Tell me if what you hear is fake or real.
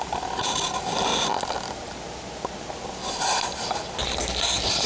real